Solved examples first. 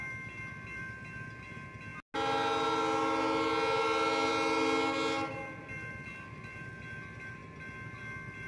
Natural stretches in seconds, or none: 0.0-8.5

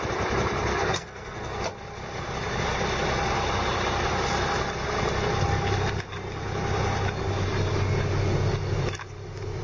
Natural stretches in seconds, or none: 0.0-0.7; 1.6-9.6

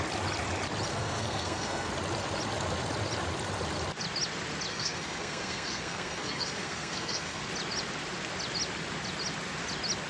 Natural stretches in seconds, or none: 0.0-0.9; 1.9-4.7; 7.4-10.1

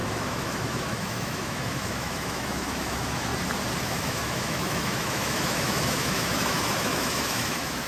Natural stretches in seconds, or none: 3.3-3.8